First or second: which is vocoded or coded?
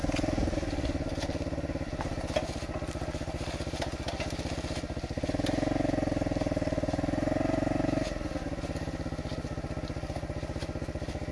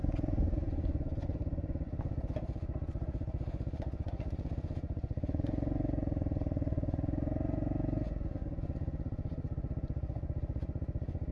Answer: second